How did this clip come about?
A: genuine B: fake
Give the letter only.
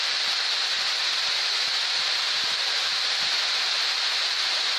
A